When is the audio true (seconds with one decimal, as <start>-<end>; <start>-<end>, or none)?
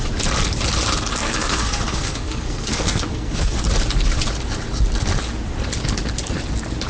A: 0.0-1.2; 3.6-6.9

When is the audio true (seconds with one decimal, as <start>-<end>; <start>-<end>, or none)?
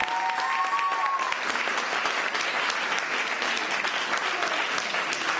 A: 0.0-5.4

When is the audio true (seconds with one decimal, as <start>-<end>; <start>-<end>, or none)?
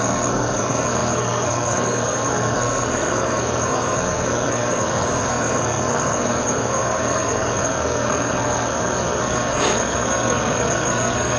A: none